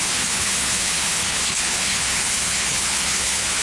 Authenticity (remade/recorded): remade